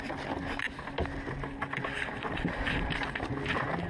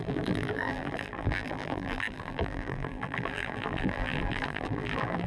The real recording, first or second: first